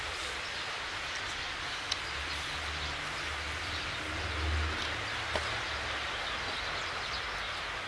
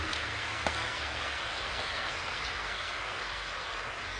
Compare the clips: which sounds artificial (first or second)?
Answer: second